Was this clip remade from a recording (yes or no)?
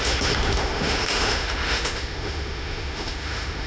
yes